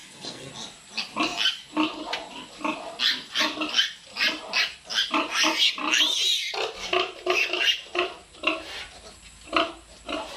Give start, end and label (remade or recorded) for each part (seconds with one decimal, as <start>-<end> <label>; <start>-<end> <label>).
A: 0.0-0.5 remade; 0.5-10.4 recorded